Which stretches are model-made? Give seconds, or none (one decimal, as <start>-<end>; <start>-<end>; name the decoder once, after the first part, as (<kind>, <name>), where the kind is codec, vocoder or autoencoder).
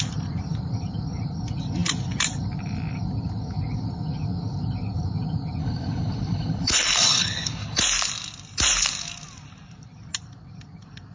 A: 5.6-7.8 (codec, HILCodec)